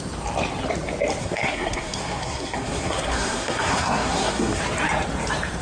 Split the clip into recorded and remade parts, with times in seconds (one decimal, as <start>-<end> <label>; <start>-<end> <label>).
0.0-1.2 recorded; 1.2-4.6 remade; 4.6-5.6 recorded